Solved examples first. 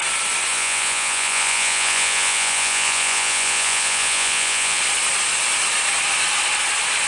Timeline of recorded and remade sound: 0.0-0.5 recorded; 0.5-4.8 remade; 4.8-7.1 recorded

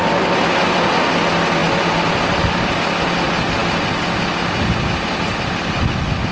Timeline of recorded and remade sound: 0.0-6.3 recorded

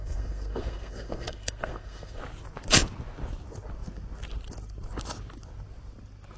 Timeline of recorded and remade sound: 0.0-2.2 remade; 2.2-6.4 recorded

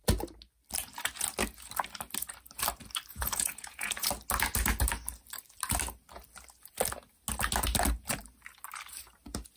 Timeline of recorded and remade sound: 0.0-3.1 recorded; 3.1-4.1 remade; 4.1-9.6 recorded

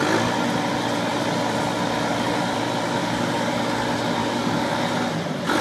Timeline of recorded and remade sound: 0.0-3.0 recorded; 3.0-3.5 remade; 3.5-4.2 recorded; 4.2-4.8 remade; 4.8-5.6 recorded

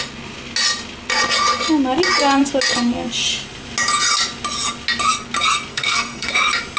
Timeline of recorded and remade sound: 0.0-5.7 recorded; 5.7-6.3 remade; 6.3-6.8 recorded